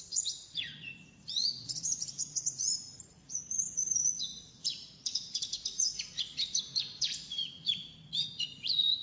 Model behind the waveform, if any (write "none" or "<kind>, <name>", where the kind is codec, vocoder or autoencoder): vocoder, Vocos